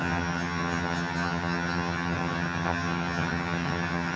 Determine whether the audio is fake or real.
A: fake